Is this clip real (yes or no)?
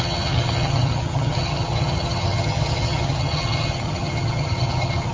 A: no